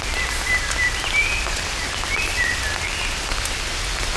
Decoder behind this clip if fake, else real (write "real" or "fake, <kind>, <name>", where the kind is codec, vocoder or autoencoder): real